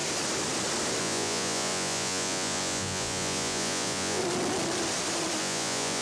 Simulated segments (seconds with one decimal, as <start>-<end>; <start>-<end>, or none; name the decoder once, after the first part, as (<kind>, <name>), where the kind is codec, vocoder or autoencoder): 1.0-4.2 (vocoder, Vocos); 5.4-6.0